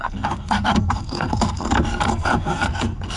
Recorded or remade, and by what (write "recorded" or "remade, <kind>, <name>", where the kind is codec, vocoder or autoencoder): remade, codec, SNAC